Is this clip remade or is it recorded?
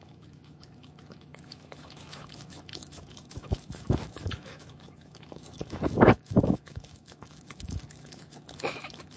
remade